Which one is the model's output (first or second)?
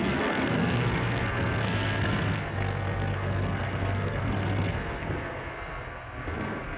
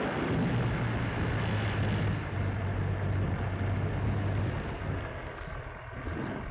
first